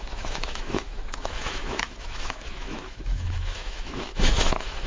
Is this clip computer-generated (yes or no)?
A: yes